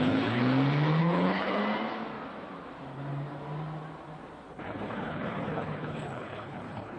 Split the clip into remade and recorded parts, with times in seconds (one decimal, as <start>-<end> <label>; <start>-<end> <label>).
0.0-0.4 remade; 0.4-1.0 recorded; 1.0-1.6 remade; 1.6-4.6 recorded; 4.6-7.0 remade